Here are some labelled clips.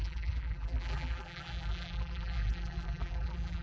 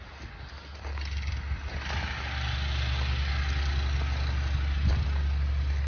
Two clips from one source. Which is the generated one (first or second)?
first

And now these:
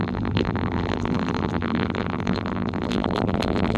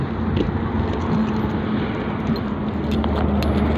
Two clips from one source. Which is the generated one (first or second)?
first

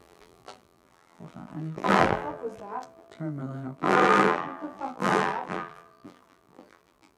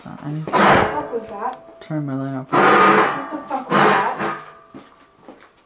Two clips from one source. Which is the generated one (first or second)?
first